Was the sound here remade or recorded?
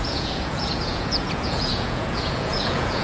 remade